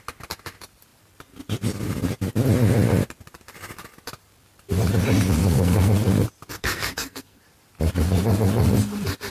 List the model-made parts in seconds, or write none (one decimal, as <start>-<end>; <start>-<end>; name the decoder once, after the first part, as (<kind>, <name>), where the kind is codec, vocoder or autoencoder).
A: 5.4-5.9 (codec, SNAC); 6.5-7.4

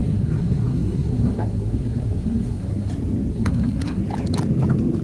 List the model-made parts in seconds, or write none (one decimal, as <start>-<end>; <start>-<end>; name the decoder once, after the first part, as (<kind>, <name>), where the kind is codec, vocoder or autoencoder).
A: 0.0-2.9 (codec, SNAC); 3.3-4.0

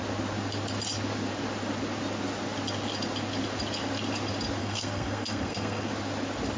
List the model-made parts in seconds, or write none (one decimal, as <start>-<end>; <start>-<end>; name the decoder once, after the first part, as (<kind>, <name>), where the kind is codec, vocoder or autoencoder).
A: 4.6-5.9 (codec, SNAC)

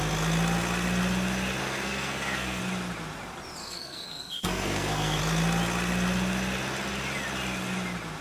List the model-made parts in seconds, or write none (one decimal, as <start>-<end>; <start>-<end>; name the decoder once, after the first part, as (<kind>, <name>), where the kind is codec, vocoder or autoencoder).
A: 1.6-2.6 (codec, SNAC); 3.6-5.2

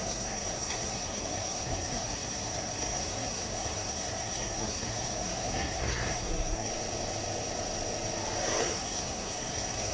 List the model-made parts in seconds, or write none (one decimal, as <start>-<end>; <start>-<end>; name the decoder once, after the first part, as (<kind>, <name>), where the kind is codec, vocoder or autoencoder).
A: 0.0-6.7 (codec, SNAC); 8.6-9.9